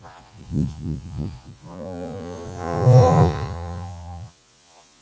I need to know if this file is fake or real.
fake